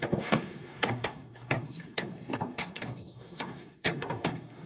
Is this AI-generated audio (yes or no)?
yes